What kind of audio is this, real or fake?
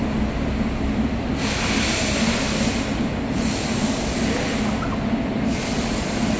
real